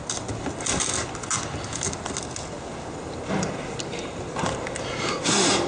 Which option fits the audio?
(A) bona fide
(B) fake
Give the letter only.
A